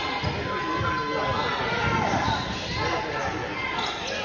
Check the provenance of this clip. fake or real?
real